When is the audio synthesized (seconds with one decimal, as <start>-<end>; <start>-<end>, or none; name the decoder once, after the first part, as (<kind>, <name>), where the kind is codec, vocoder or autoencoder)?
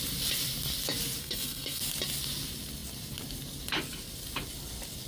1.2-1.8 (codec, SNAC)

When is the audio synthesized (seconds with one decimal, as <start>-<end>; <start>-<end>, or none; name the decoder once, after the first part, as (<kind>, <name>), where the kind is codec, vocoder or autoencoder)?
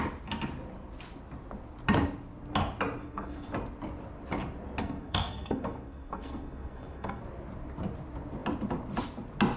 3.0-3.5 (codec, SNAC); 4.8-7.2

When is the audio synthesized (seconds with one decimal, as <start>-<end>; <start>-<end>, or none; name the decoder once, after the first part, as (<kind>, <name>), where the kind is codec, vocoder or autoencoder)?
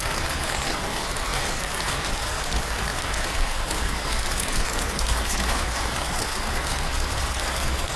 0.0-8.0 (codec, SNAC)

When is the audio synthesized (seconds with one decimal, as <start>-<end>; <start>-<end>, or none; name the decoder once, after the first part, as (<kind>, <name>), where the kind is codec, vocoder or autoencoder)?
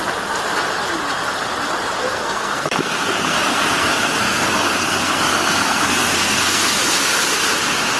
2.0-6.8 (codec, SNAC)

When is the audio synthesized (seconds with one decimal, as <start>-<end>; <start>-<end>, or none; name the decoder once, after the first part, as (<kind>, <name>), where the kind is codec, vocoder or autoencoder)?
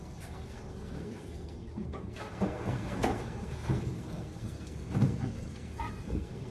0.0-6.5 (codec, SNAC)